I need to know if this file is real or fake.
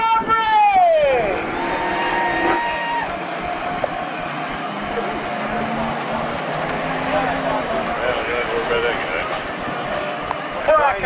real